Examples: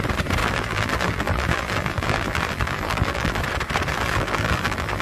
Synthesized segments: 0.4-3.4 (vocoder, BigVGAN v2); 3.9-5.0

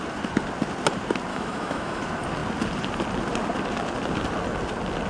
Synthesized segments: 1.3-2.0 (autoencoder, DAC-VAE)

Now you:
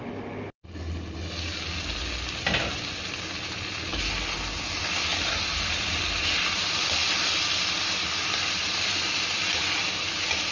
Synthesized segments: none

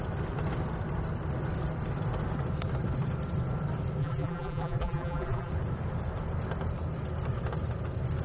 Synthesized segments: 4.0-5.5 (vocoder, BigVGAN v2)